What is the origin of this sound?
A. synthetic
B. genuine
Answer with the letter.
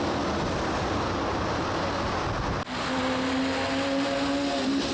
B